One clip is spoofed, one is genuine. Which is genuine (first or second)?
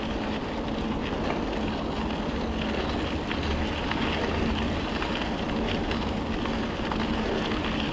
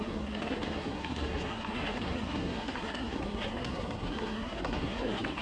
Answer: first